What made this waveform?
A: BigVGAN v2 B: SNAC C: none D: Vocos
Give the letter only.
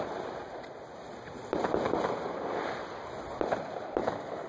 C